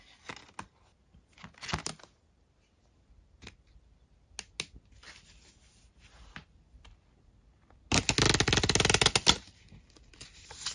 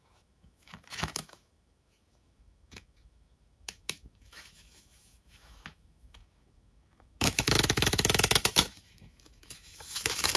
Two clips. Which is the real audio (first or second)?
first